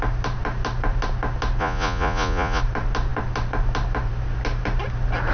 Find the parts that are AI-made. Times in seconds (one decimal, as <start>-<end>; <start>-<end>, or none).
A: 1.6-2.6